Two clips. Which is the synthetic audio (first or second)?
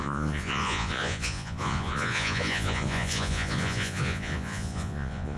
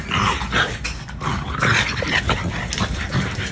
first